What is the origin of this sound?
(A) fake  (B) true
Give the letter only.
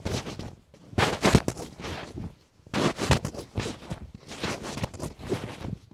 B